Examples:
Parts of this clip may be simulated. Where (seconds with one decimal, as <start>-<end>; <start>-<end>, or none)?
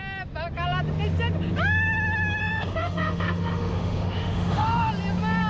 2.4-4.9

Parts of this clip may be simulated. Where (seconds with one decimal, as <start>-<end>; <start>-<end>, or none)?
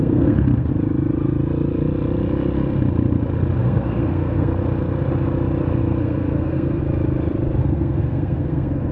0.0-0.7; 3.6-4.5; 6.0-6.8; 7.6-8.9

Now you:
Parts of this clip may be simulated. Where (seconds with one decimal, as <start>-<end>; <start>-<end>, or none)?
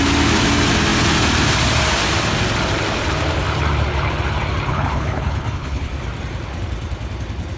4.7-5.9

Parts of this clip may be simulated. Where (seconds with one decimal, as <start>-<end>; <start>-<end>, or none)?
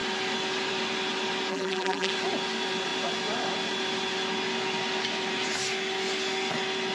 1.5-2.1